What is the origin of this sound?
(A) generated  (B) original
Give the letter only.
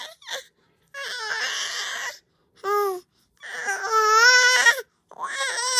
B